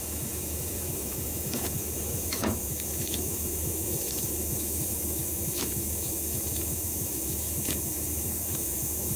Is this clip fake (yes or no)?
yes